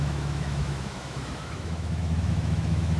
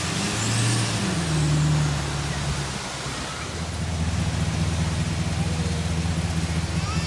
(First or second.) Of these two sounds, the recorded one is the second